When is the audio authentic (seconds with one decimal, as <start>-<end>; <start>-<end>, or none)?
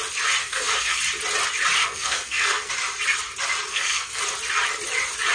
0.0-0.4; 1.0-1.8; 2.7-3.7; 4.2-5.3